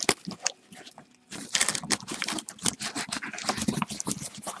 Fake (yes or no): no